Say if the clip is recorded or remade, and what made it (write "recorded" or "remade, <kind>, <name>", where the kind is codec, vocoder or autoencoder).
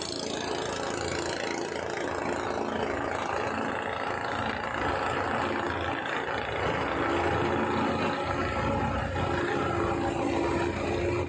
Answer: recorded